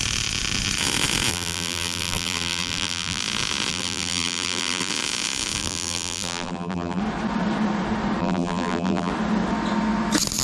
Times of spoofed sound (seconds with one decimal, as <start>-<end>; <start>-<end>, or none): 1.3-3.2; 3.7-4.9; 5.6-7.0; 8.2-9.1